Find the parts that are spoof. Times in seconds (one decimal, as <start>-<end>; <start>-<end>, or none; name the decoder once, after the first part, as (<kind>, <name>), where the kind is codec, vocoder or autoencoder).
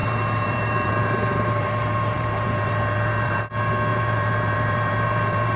0.0-3.4 (vocoder, BigVGAN v2); 3.9-5.6